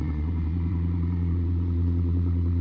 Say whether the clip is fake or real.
fake